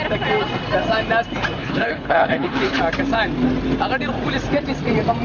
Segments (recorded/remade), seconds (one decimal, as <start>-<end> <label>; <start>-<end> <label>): 0.0-1.6 recorded; 1.6-2.8 remade; 2.8-5.2 recorded